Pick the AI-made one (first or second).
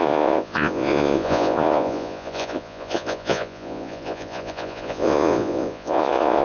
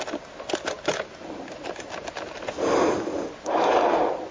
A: first